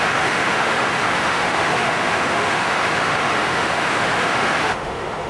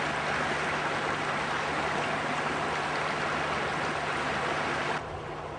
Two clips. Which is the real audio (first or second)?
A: second